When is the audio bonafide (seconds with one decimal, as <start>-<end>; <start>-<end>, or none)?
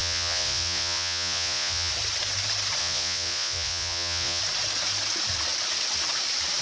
1.9-2.8; 4.4-6.6